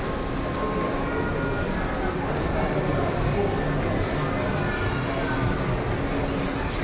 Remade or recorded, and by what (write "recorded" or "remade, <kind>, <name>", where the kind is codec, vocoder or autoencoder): recorded